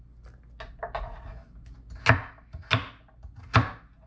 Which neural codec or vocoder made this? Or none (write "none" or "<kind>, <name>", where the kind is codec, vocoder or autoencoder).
none